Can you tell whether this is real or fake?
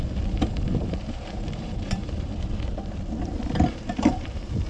fake